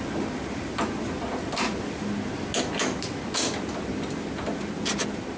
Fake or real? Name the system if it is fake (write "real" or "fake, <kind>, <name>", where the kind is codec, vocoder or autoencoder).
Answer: real